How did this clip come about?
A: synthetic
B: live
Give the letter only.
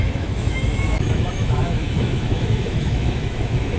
A